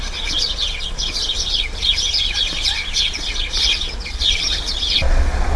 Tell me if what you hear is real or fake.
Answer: fake